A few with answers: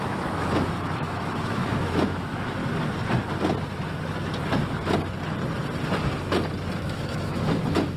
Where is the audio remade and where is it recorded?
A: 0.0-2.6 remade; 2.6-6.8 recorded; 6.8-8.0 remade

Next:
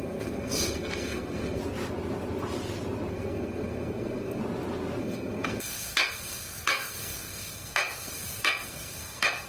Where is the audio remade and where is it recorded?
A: 0.0-1.6 remade; 1.6-3.1 recorded; 3.1-4.4 remade; 4.4-5.0 recorded; 5.0-9.5 remade

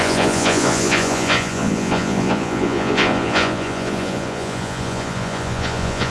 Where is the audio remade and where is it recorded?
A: 0.0-6.1 remade

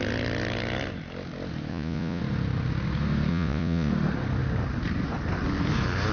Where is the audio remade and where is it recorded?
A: 0.0-1.7 recorded; 1.7-2.2 remade; 2.2-3.3 recorded; 3.3-3.9 remade; 3.9-6.1 recorded

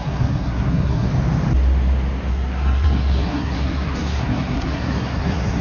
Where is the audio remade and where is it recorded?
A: 0.0-1.1 remade; 1.1-2.3 recorded; 2.3-5.6 remade

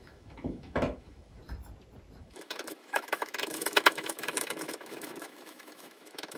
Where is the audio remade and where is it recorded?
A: 0.0-1.4 remade; 1.4-2.2 recorded; 2.2-6.4 remade